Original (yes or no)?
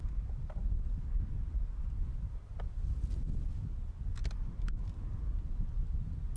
yes